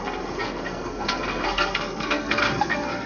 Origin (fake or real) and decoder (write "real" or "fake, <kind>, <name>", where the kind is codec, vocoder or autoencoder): fake, codec, SNAC